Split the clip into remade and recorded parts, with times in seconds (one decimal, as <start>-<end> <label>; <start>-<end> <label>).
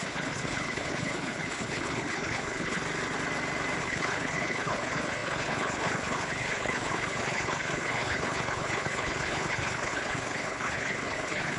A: 0.0-2.8 remade; 2.8-3.8 recorded; 3.8-11.6 remade